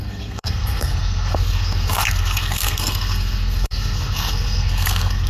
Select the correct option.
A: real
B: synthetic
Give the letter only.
B